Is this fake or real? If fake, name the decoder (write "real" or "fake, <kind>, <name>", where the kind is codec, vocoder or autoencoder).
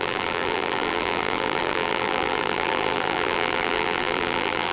fake, vocoder, BigVGAN v2